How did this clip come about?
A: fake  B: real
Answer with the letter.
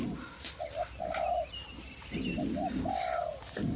B